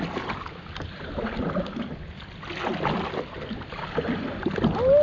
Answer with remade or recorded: recorded